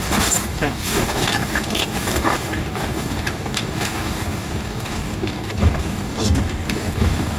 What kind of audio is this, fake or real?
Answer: fake